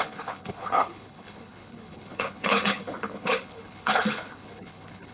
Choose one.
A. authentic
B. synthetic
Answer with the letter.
B